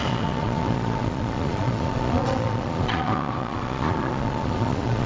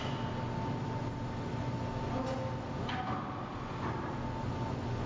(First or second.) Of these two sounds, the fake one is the first